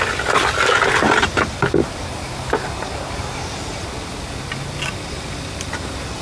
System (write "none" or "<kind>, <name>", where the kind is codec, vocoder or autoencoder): none